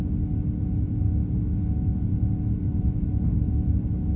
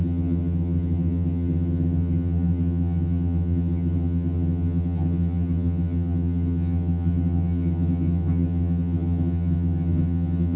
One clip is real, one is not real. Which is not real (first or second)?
second